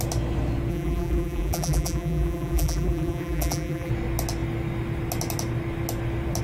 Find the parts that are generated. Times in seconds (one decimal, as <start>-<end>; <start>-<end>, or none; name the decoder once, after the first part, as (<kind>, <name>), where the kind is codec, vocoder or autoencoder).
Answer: 0.7-3.9 (vocoder, BigVGAN v2)